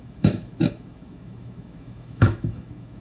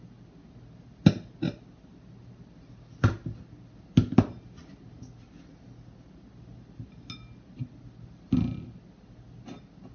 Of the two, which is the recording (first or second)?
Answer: second